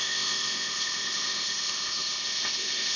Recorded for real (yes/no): no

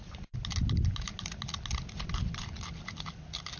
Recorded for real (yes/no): yes